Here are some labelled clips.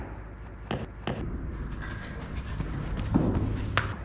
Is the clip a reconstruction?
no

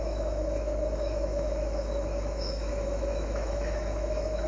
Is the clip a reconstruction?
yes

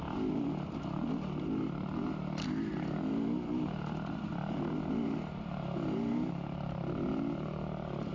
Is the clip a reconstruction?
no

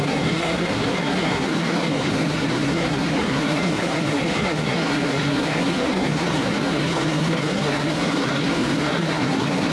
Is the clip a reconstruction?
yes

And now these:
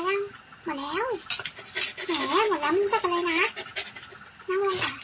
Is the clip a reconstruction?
no